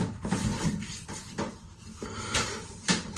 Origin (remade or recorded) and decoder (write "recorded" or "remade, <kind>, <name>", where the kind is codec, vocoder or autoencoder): recorded